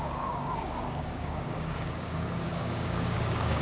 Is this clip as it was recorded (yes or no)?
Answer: no